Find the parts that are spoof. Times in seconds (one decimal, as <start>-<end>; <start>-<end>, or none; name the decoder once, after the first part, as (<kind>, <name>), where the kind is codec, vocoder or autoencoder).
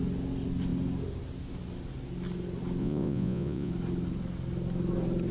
2.8-3.7 (vocoder, Vocos)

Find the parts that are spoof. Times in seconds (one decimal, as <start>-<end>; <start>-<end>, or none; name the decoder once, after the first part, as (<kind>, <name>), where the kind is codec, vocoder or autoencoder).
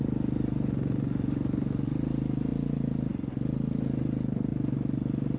none